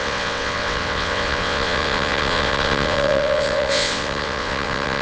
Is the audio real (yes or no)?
no